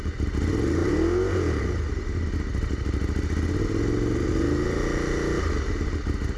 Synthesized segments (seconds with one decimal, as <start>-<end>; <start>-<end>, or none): none